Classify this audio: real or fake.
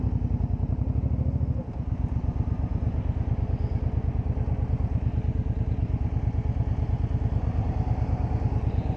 real